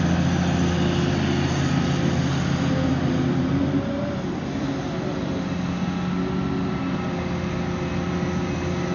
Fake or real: real